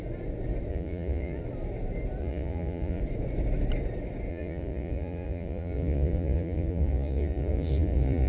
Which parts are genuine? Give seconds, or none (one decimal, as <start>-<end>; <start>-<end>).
0.0-0.7; 1.4-2.2; 3.0-4.3